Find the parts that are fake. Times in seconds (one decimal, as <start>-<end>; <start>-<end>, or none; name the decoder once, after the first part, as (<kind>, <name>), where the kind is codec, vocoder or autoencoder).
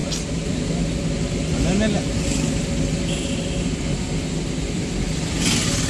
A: none